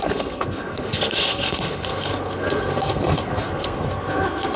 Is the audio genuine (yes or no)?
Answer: no